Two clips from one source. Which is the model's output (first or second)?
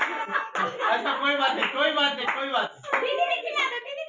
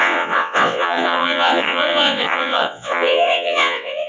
second